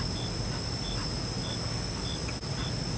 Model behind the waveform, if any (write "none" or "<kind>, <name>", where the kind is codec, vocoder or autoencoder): none